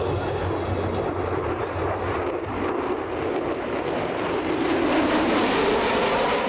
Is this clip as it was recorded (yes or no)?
yes